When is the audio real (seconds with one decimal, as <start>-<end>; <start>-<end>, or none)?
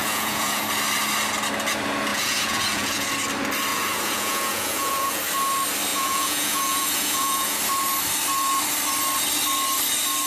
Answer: 0.6-2.1; 3.1-3.7; 5.2-5.9; 7.6-10.3